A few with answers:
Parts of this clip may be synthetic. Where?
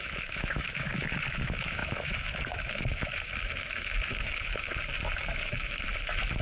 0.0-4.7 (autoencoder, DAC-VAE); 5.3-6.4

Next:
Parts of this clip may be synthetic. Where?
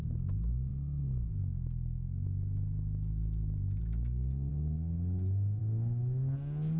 0.7-3.8 (autoencoder, DAC-VAE)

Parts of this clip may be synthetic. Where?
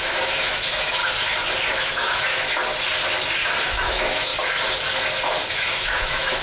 0.0-1.0 (autoencoder, DAC-VAE); 1.7-2.6; 3.6-4.3; 5.5-6.4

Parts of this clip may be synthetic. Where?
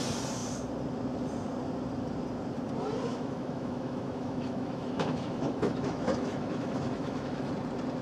3.1-7.5 (autoencoder, DAC-VAE)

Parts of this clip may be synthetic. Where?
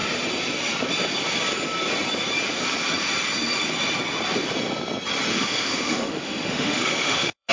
5.3-7.5 (autoencoder, DAC-VAE)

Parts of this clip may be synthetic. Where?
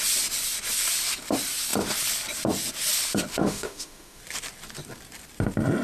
3.3-4.2 (autoencoder, DAC-VAE)